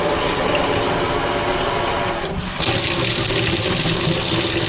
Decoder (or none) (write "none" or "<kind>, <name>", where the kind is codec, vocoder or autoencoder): none